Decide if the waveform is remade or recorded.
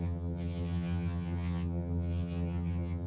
remade